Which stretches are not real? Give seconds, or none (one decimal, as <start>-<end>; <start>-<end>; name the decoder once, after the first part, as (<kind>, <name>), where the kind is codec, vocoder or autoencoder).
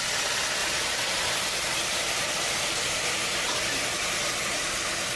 0.6-3.7 (vocoder, BigVGAN v2)